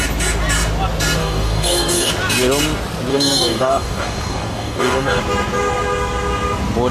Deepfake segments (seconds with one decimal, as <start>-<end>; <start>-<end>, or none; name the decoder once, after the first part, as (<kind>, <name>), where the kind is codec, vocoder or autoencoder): 1.2-2.1 (codec, DAC); 3.1-5.2